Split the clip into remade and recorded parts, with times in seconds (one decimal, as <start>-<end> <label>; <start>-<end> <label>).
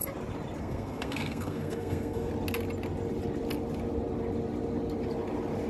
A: 0.0-0.6 recorded; 0.6-2.3 remade; 2.3-5.7 recorded